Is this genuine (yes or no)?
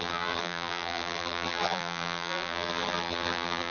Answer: no